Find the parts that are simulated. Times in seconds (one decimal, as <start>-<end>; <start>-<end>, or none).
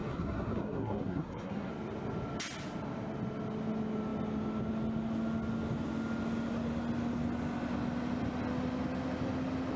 0.0-1.7